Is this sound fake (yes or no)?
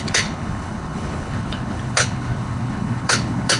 yes